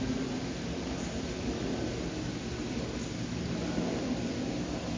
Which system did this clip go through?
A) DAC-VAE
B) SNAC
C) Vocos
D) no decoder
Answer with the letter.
D